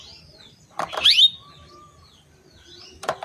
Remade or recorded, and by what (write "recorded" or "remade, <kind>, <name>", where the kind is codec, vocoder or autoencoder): recorded